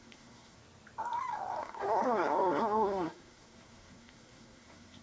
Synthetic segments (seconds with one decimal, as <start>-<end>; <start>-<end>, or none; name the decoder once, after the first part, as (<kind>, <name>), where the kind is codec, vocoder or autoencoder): 0.0-0.6 (codec, SNAC); 1.6-5.0